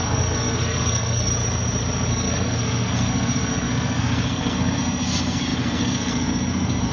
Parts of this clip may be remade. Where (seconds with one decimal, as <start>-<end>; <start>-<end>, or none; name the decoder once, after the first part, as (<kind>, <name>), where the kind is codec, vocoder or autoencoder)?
0.0-1.3 (codec, SNAC); 2.1-6.9